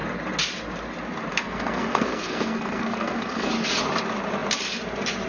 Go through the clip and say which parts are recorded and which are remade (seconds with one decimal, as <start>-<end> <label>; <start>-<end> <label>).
0.0-1.3 recorded; 1.3-3.5 remade; 3.5-5.3 recorded